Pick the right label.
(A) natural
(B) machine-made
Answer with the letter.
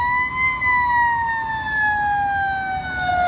A